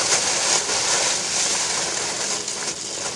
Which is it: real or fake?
real